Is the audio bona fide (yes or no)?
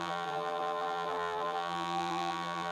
no